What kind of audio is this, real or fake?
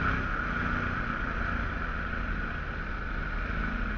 real